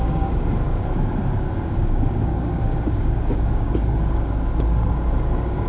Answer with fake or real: fake